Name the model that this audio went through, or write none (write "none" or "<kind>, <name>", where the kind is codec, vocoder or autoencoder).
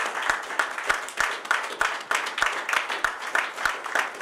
none